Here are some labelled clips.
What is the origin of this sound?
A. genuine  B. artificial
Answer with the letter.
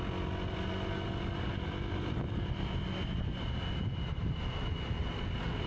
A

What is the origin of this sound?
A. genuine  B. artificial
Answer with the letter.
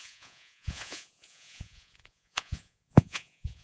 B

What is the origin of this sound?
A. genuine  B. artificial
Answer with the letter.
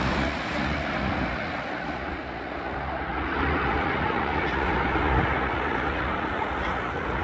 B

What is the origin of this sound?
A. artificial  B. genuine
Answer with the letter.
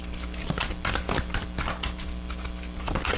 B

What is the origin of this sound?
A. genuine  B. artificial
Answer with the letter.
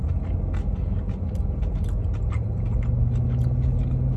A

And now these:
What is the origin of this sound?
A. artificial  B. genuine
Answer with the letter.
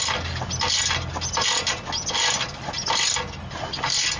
B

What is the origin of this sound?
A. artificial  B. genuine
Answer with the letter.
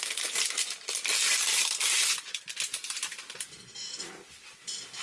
B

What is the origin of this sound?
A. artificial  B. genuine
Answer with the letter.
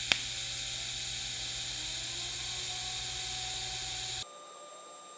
B